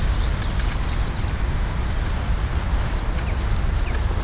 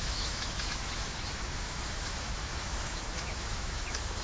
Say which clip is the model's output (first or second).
second